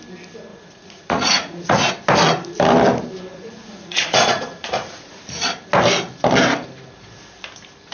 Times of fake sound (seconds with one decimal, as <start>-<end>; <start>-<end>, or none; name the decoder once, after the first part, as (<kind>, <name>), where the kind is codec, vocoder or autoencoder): 0.5-1.9 (vocoder, Vocos); 3.3-5.3